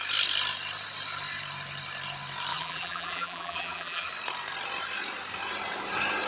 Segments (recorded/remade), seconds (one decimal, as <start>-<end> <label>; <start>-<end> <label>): 0.0-2.5 recorded; 2.5-4.1 remade; 4.1-6.3 recorded